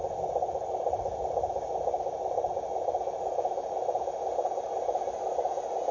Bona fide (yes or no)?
yes